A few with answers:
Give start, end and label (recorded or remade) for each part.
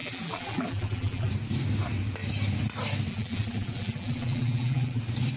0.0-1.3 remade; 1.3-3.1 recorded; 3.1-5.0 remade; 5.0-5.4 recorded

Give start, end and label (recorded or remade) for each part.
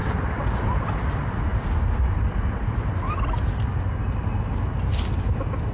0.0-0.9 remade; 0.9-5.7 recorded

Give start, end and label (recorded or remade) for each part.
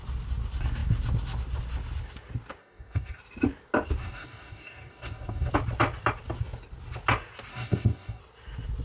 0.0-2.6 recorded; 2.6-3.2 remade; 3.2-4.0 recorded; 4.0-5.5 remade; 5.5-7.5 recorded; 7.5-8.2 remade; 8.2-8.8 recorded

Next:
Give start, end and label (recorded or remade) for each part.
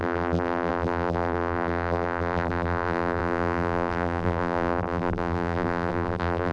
0.0-6.5 remade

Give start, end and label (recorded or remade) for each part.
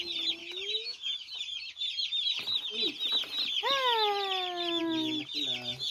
0.0-0.4 recorded; 0.4-1.3 remade; 1.3-5.9 recorded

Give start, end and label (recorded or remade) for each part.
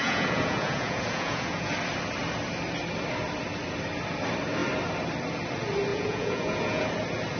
0.0-1.7 remade; 1.7-5.9 recorded; 5.9-6.9 remade; 6.9-7.4 recorded